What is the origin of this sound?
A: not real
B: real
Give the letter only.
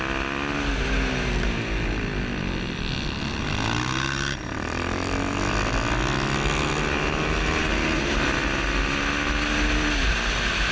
B